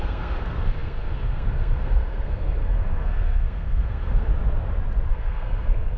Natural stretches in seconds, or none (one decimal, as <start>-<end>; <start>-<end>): 4.3-5.1